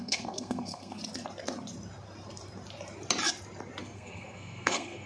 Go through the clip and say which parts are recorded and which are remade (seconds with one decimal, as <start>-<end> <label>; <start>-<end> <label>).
0.0-1.0 remade; 1.0-3.8 recorded; 3.8-5.1 remade